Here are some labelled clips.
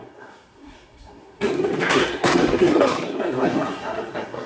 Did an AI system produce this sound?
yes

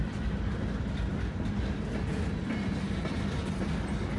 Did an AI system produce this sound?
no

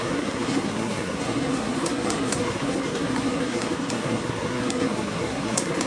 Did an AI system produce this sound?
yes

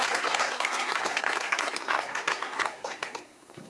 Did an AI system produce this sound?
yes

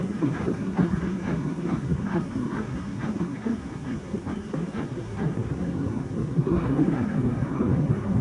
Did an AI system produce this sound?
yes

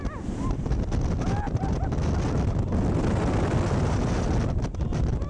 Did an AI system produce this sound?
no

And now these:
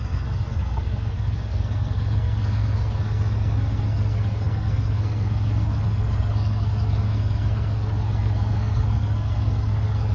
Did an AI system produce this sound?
yes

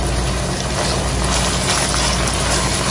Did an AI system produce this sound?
no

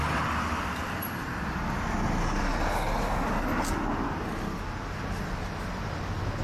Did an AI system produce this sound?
no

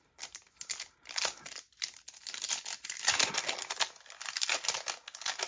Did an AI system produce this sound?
no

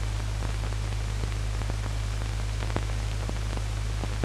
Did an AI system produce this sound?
no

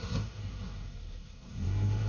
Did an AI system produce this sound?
yes